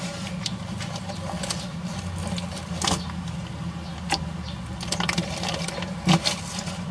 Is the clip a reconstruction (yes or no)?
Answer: no